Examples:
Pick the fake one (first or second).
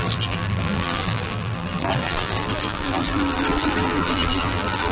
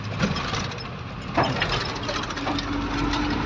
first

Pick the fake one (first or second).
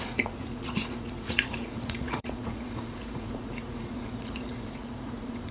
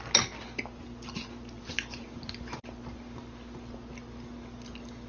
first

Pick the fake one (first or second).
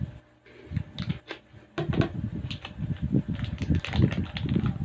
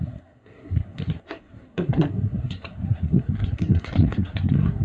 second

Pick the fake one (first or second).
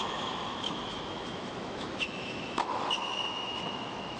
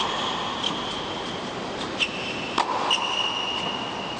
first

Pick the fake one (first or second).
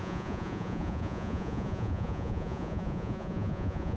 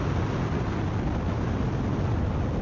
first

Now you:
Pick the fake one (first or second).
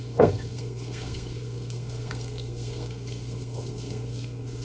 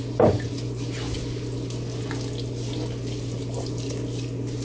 first